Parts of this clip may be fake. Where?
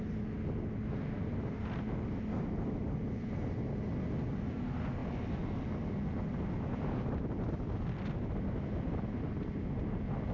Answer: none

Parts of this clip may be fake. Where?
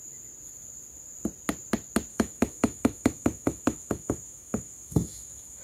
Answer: 2.1-5.6 (autoencoder, DAC-VAE)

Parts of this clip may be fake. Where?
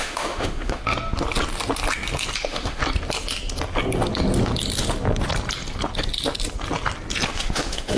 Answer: 0.0-0.8 (autoencoder, DAC-VAE); 2.4-2.8; 7.3-8.0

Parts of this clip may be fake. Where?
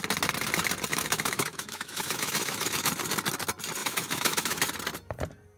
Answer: 0.9-2.9 (autoencoder, DAC-VAE); 3.8-4.6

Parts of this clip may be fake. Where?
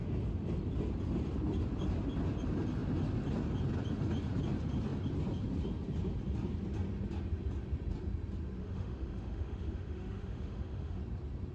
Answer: 8.6-11.0 (autoencoder, DAC-VAE)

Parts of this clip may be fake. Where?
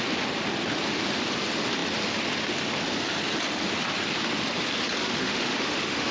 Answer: 5.0-6.1 (autoencoder, DAC-VAE)